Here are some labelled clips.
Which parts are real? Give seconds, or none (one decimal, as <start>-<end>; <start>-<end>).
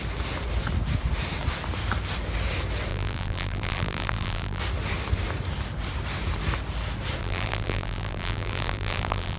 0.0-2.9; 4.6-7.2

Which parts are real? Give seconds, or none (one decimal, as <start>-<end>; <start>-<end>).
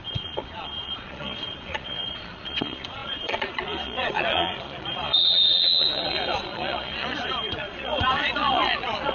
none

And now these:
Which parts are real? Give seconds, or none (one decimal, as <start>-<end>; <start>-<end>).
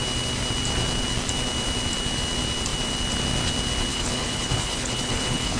0.0-3.9